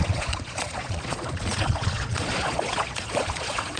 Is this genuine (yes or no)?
no